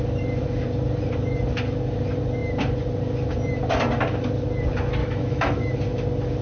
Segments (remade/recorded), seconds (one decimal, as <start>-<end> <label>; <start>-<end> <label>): 0.0-5.0 recorded; 5.0-5.7 remade; 5.7-6.4 recorded